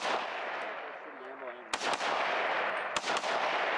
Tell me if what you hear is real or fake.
real